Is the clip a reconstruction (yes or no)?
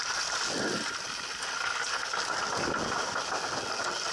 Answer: no